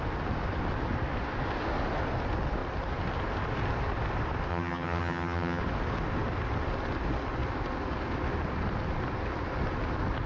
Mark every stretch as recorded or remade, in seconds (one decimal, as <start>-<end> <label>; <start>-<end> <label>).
0.0-4.5 recorded; 4.5-5.6 remade; 5.6-10.3 recorded